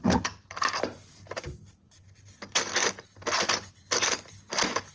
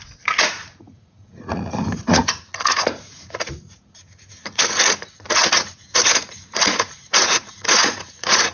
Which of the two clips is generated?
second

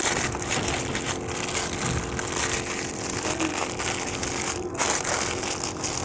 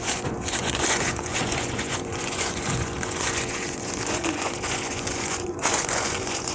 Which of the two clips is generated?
second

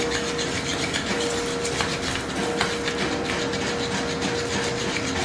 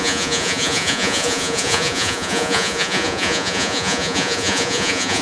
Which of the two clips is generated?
second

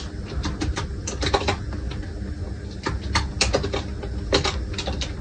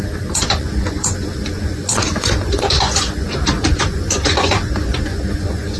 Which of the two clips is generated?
second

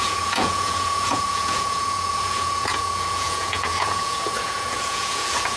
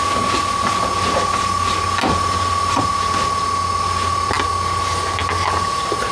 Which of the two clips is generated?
first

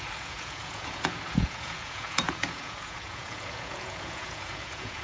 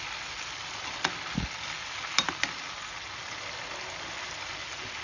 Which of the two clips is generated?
first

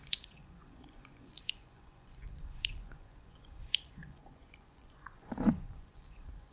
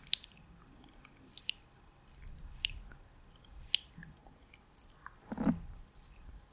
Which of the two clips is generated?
first